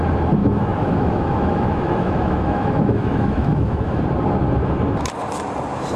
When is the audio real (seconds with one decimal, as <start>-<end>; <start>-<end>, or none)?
0.0-0.4; 4.0-6.0